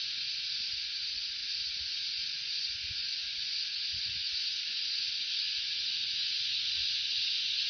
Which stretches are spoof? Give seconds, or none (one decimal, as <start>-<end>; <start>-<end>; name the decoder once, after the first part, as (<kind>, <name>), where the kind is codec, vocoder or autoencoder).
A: 0.0-7.7 (vocoder, Vocos)